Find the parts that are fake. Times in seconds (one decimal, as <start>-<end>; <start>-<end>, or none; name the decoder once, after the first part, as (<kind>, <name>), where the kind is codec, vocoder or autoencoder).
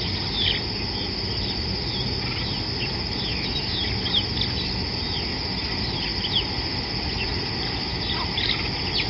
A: none